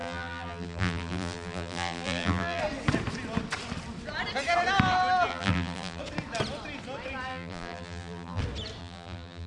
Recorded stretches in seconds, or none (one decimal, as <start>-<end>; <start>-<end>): 2.6-5.3; 6.0-7.3; 8.4-8.8